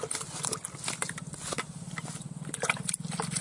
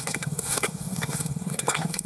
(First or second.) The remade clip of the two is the second